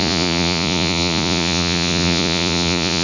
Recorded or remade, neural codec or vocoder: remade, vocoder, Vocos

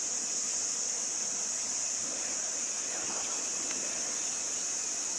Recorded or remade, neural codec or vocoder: recorded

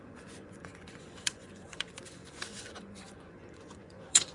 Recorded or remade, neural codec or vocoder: remade, vocoder, Vocos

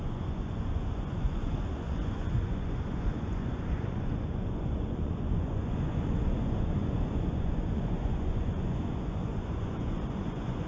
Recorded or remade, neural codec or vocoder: remade, vocoder, Vocos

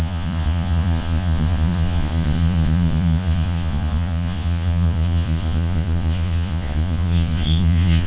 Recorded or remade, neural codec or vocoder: remade, vocoder, Vocos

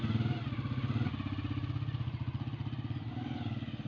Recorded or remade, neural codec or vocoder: recorded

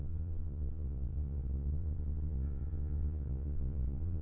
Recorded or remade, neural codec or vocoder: remade, vocoder, Vocos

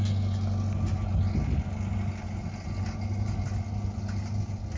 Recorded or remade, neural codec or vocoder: recorded